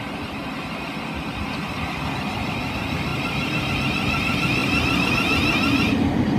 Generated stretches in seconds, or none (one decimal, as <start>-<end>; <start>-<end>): 3.1-3.7